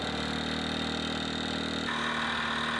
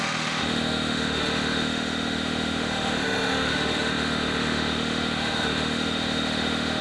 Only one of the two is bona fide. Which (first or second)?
first